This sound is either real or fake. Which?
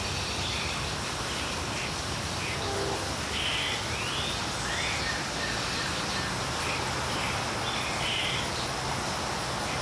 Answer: real